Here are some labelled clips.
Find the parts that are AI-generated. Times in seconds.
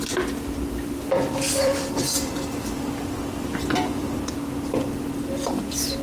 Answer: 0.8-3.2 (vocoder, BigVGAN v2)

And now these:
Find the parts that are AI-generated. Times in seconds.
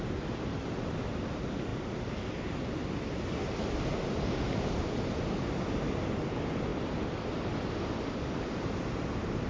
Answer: none